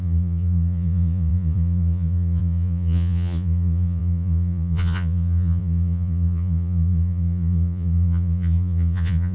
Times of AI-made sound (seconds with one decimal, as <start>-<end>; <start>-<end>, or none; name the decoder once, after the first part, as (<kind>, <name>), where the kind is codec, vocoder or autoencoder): 0.0-9.3 (vocoder, Vocos)